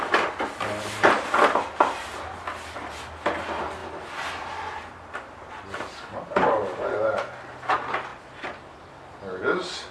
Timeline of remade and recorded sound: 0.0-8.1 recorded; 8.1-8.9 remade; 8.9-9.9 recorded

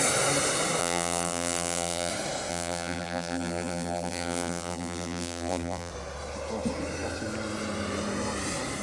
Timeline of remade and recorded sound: 0.0-0.8 recorded; 0.8-2.1 remade; 2.1-2.5 recorded; 2.5-5.9 remade; 5.9-8.8 recorded